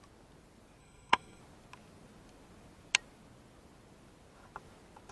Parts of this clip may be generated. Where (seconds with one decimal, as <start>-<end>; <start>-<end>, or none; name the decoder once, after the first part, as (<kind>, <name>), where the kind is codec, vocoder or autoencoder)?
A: 0.8-1.4 (codec, SNAC)